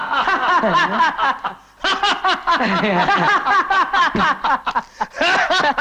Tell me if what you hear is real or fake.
real